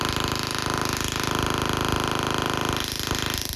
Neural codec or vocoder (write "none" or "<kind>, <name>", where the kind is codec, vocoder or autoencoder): none